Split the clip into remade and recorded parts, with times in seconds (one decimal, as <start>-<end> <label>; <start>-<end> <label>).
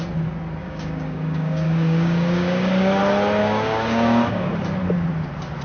0.0-0.6 recorded; 0.6-3.0 remade; 3.0-3.4 recorded; 3.4-4.5 remade; 4.5-5.6 recorded